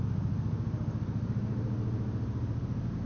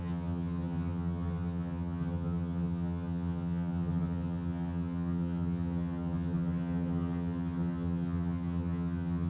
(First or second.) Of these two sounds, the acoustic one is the first